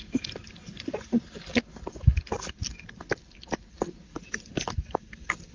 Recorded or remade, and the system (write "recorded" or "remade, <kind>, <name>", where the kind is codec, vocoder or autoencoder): recorded